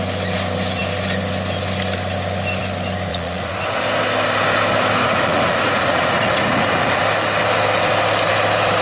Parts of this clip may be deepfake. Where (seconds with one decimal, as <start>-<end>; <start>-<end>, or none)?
3.1-3.8; 5.0-7.0